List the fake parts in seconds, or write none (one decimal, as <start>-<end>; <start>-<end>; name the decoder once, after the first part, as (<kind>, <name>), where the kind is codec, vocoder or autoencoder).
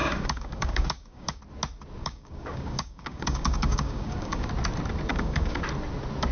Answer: 0.0-1.4 (codec, DAC); 2.0-4.5; 5.1-5.6